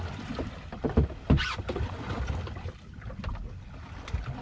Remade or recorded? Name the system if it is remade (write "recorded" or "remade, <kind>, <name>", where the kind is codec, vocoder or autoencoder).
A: recorded